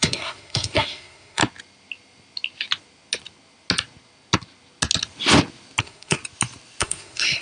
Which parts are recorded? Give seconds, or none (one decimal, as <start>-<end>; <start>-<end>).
1.4-5.8; 6.2-6.8